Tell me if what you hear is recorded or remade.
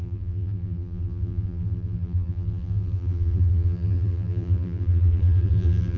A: remade